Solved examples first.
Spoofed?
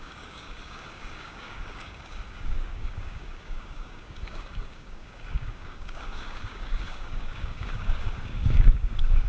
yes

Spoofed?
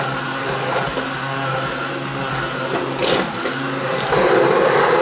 no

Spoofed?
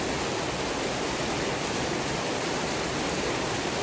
no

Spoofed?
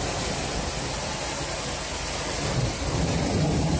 no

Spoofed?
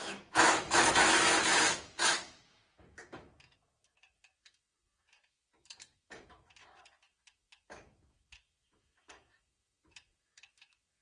yes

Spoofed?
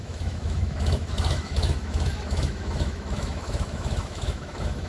yes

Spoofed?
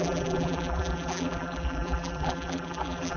yes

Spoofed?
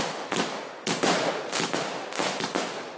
no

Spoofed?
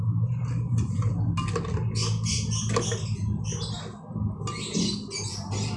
no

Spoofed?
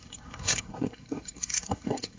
yes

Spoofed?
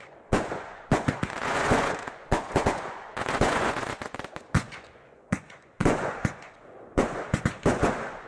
yes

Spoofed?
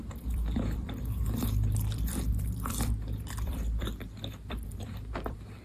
yes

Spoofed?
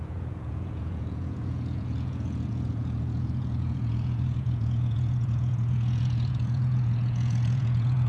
yes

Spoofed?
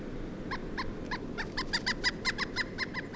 no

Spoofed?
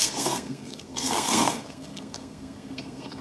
yes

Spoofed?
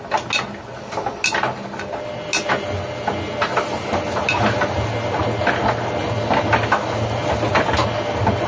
no